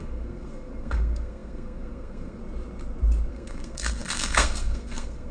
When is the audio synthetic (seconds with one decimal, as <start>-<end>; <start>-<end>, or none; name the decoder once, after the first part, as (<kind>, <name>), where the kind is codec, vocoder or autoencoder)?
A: 0.0-2.4 (codec, SNAC); 3.3-5.3